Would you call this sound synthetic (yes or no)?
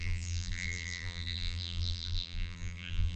yes